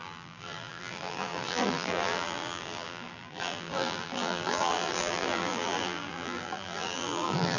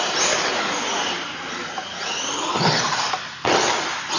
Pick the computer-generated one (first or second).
first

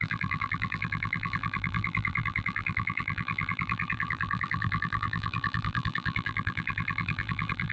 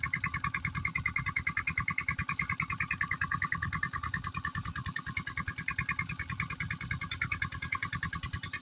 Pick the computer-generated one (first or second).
first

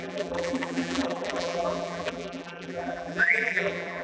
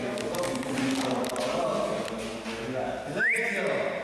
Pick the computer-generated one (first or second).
first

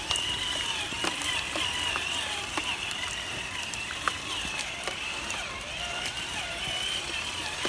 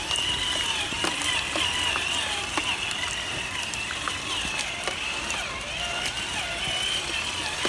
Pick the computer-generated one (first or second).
first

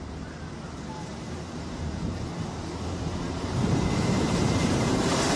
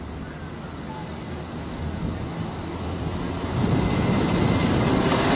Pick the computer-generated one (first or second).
first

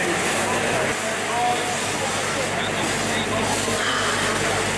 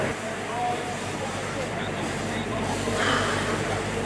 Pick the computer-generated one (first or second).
second